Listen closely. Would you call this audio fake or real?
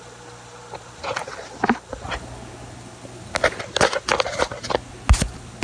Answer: real